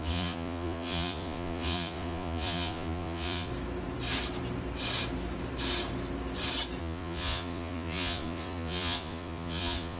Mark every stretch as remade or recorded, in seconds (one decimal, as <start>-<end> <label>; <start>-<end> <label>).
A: 0.0-3.5 remade; 3.5-6.8 recorded; 6.8-10.0 remade